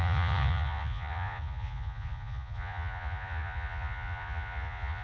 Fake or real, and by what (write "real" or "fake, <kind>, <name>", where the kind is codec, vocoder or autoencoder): fake, vocoder, Vocos